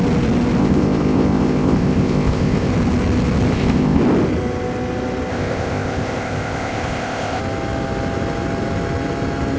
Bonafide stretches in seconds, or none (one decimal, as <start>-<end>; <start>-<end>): 0.0-0.6; 2.7-3.5; 4.0-5.3; 7.4-9.6